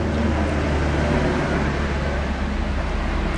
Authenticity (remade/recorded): recorded